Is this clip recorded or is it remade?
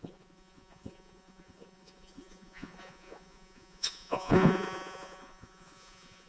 remade